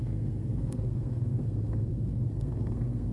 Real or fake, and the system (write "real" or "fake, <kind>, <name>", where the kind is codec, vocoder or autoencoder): fake, codec, SNAC